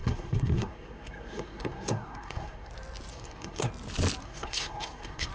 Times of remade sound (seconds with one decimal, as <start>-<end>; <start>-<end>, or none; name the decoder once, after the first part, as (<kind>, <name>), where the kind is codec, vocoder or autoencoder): 0.0-2.7 (codec, SNAC); 3.1-3.7; 4.2-5.3